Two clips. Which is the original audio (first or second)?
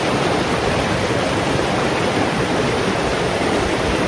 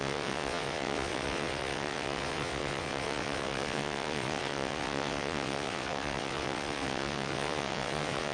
first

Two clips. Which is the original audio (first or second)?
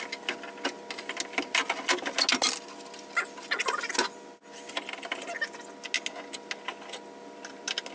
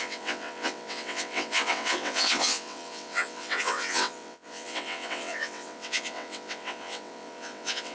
first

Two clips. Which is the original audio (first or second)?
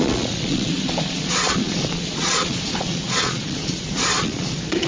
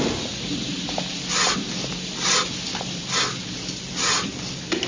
second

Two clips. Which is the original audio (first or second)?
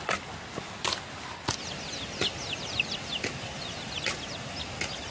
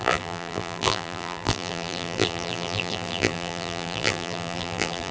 first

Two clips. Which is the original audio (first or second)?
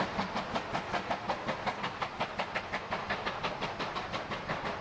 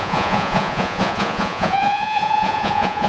first